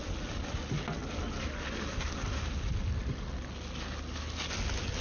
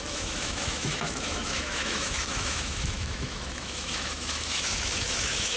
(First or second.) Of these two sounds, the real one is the first